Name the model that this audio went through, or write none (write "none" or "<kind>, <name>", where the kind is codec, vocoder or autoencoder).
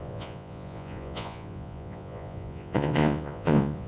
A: vocoder, Vocos